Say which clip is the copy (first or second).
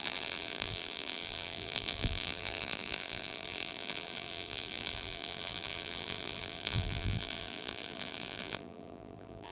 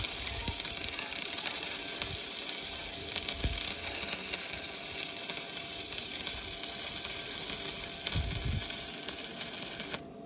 first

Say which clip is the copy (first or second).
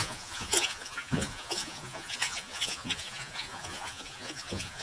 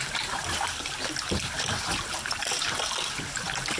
first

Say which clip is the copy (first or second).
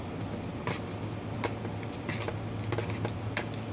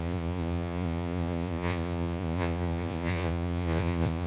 second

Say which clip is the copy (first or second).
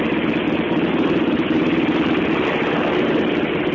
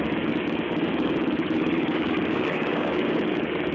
second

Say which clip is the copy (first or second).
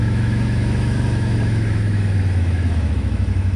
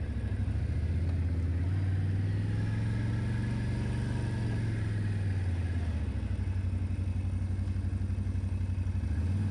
first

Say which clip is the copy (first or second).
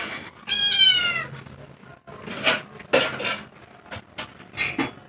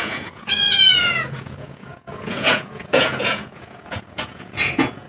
second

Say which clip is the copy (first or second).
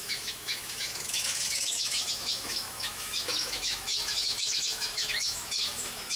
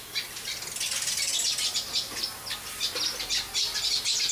first